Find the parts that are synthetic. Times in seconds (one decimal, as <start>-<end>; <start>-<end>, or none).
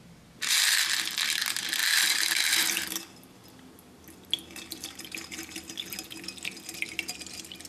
none